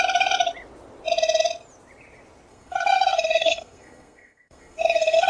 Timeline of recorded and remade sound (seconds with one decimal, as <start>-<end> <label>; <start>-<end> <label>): 0.0-2.5 recorded; 2.5-5.3 remade